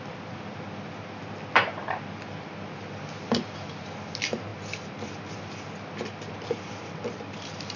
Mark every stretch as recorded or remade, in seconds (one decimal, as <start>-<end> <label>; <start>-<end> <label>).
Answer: 0.0-7.8 recorded